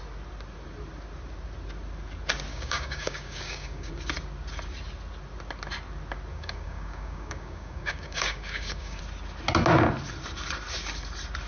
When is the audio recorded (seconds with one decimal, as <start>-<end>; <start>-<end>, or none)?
0.0-2.5; 3.9-6.3; 9.0-11.5